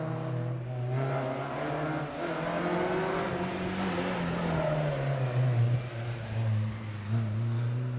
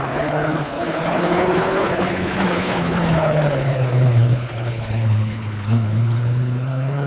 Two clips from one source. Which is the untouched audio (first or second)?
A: first